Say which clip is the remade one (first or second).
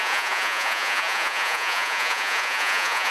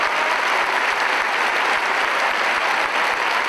first